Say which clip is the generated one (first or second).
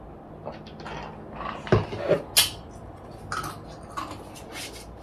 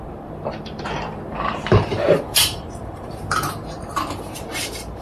second